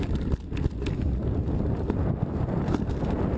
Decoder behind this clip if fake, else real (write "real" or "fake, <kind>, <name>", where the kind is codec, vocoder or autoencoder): real